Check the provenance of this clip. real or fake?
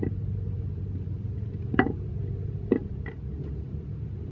fake